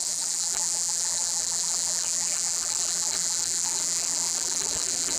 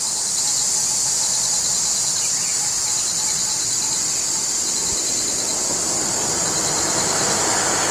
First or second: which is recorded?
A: second